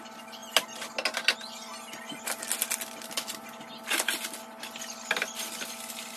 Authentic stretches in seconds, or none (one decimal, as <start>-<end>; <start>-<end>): 0.0-6.2